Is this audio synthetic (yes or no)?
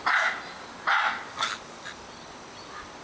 no